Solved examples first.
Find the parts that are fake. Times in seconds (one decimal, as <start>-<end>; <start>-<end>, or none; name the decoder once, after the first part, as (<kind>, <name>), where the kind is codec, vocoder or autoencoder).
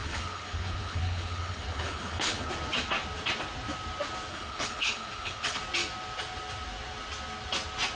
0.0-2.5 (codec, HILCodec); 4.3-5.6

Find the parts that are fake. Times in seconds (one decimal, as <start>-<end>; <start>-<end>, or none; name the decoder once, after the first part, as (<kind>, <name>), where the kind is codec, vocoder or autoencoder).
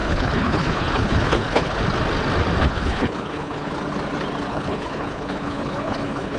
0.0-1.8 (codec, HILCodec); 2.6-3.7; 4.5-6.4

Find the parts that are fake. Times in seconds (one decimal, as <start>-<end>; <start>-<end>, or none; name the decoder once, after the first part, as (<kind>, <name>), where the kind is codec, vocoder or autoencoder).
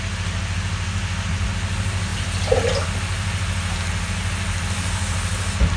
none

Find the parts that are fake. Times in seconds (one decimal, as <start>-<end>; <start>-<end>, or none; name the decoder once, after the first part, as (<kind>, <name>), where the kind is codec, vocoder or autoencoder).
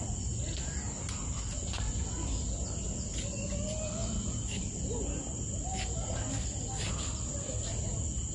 none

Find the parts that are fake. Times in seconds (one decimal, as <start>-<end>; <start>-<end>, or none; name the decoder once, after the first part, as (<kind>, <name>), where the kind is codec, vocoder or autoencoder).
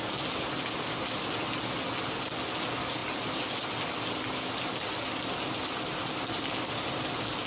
none